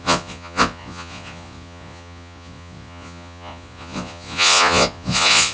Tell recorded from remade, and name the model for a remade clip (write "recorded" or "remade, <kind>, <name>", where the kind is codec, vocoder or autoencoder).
remade, vocoder, Vocos